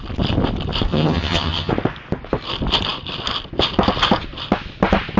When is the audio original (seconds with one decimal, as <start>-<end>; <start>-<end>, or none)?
0.0-0.9; 1.7-5.2